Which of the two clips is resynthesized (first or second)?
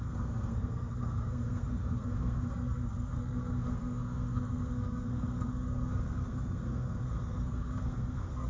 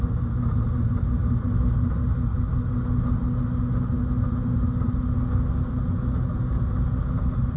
first